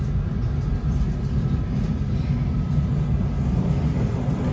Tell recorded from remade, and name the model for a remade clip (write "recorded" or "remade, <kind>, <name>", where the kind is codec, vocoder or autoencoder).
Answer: recorded